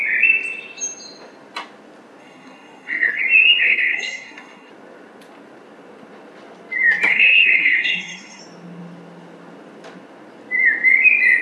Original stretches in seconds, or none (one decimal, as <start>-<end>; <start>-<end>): 0.0-2.2; 3.2-3.6; 4.7-7.1; 8.4-11.4